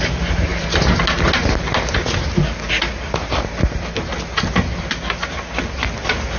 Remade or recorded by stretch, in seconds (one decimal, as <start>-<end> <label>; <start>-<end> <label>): 0.0-6.4 recorded